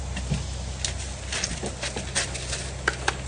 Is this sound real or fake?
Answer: real